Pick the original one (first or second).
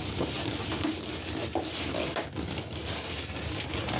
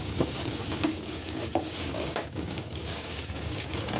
first